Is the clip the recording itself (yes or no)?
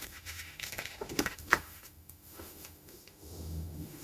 no